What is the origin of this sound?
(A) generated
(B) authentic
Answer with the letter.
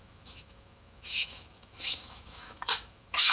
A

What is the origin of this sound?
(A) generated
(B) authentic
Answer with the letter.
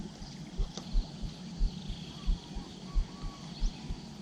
B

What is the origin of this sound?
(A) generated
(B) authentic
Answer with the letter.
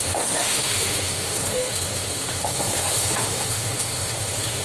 A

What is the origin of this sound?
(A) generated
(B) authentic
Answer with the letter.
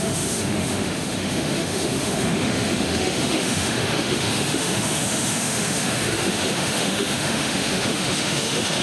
A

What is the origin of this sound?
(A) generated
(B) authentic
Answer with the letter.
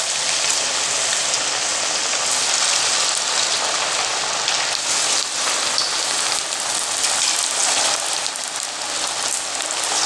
B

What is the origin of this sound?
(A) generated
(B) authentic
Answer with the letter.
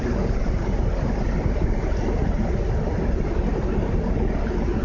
B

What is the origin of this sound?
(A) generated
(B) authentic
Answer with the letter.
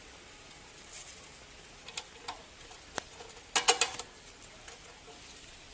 B